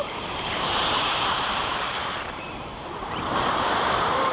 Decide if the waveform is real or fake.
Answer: fake